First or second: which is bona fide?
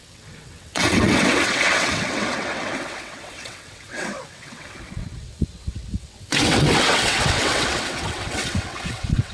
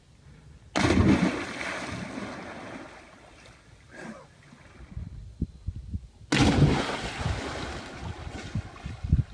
second